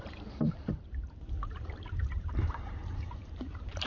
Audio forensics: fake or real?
fake